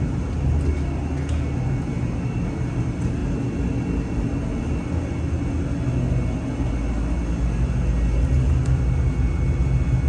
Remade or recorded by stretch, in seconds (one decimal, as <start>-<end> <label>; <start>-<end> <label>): 0.0-10.1 recorded